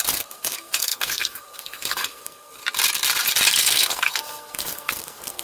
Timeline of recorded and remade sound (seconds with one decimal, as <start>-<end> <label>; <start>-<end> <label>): 0.0-2.6 remade; 2.6-3.6 recorded; 3.6-5.4 remade